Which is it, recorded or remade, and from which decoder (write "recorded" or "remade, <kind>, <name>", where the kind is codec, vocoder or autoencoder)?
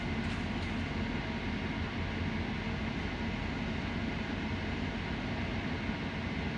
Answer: recorded